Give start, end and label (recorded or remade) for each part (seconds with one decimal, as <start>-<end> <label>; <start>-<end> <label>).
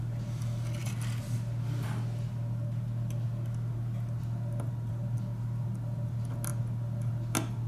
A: 0.0-7.7 recorded